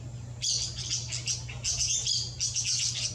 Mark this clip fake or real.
real